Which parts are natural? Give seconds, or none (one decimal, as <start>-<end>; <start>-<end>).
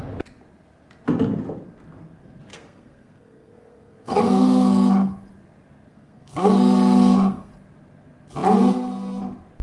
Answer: 0.0-2.5; 5.1-5.9; 7.5-9.6